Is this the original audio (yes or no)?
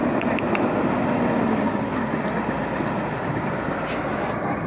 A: yes